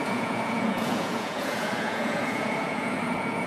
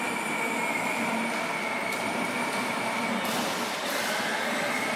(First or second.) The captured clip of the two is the second